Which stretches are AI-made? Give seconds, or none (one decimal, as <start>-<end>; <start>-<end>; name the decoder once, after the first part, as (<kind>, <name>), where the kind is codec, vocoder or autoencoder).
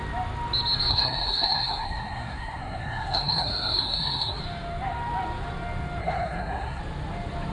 0.9-4.4 (codec, SNAC); 6.0-6.8